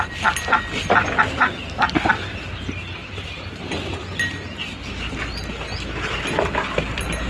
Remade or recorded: recorded